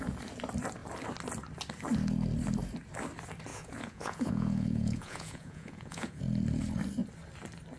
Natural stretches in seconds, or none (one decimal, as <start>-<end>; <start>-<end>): 0.0-3.5; 6.2-7.8

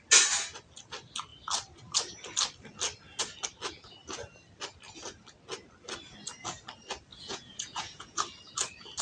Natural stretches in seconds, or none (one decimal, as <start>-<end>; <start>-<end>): 0.0-7.1; 8.2-9.0